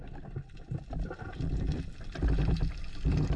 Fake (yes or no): yes